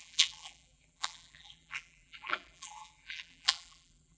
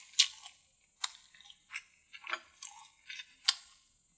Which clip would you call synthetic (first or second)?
first